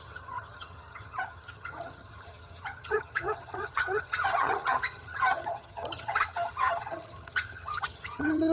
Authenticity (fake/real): fake